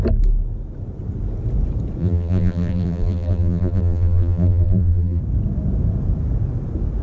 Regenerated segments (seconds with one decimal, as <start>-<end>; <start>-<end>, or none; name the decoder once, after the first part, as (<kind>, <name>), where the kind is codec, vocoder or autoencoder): 2.0-5.2 (vocoder, BigVGAN v2)